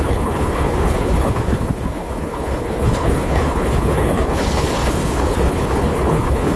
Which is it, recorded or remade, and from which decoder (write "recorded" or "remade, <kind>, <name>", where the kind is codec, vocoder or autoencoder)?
remade, codec, HILCodec